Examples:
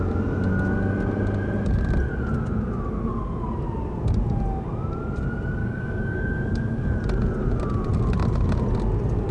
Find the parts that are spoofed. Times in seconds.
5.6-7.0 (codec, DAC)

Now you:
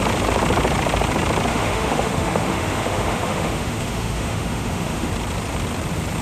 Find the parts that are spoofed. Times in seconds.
1.5-5.1 (autoencoder, DAC-VAE)

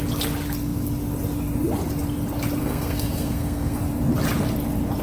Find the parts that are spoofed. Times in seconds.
2.6-3.8 (codec, SNAC)

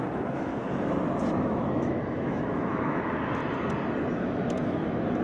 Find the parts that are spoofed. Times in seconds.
0.0-0.6 (autoencoder, DAC-VAE); 1.4-3.4; 4.1-5.2

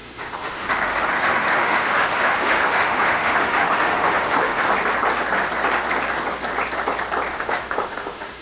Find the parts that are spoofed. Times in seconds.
0.0-4.7 (autoencoder, DAC-VAE); 7.3-8.4

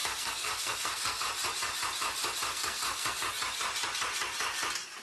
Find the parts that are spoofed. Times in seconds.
0.0-1.2 (codec, SNAC); 2.5-3.2

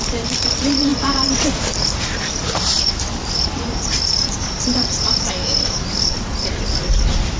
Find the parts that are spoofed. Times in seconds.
0.0-7.4 (vocoder, BigVGAN v2)

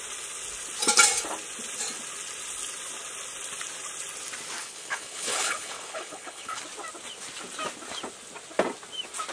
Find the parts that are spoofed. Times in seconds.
4.6-6.6 (codec, HILCodec)